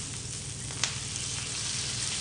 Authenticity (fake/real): real